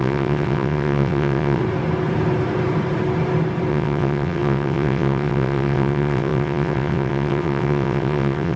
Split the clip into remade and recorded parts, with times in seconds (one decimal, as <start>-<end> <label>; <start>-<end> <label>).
0.0-1.6 remade; 1.6-3.7 recorded; 3.7-8.6 remade